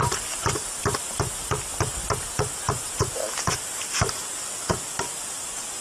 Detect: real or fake real